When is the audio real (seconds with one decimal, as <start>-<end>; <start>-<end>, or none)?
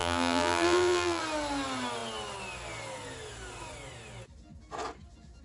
1.2-5.4